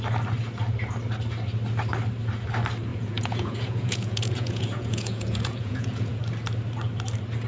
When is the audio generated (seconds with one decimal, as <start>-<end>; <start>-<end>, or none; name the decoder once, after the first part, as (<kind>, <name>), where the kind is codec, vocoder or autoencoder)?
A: 2.9-6.2 (vocoder, Vocos)